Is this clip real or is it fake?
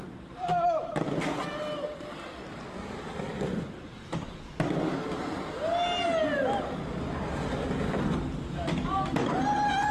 real